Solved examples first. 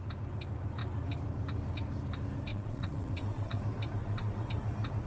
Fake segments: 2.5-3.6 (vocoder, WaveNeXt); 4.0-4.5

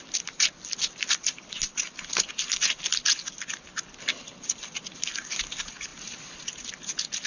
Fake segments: none

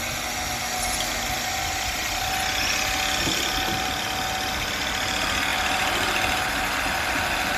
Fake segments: none

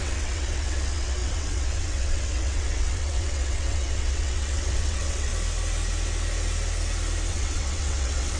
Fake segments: 0.0-5.3 (vocoder, WaveNeXt); 7.3-8.4

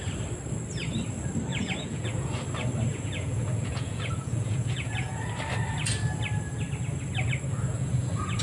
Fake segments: 1.5-2.3 (vocoder, Vocos); 2.9-5.2; 7.5-8.4

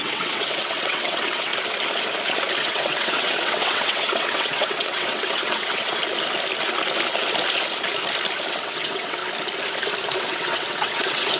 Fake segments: 0.0-1.5 (vocoder, WaveNeXt); 2.6-6.0; 8.5-9.2; 10.2-11.4